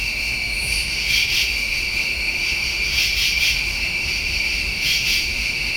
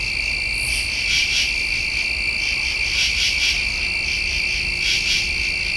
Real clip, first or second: second